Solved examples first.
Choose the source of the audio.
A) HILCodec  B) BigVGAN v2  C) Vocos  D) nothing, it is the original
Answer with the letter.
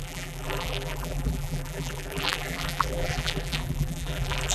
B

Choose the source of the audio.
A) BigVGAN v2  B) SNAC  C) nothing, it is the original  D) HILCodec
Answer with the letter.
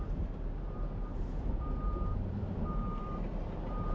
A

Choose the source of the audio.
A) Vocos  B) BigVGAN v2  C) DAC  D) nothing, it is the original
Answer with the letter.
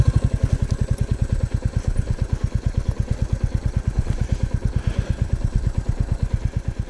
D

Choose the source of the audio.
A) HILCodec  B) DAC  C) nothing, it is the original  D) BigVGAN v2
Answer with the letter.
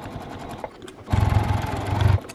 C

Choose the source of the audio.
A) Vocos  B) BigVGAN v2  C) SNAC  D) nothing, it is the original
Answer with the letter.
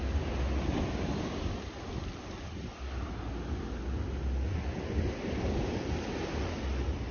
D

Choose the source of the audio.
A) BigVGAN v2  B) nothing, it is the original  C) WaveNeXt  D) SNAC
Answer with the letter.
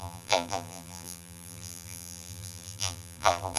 A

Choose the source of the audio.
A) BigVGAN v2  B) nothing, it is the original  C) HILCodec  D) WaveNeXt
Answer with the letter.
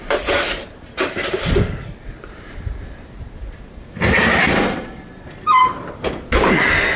B